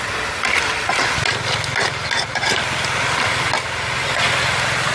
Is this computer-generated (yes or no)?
no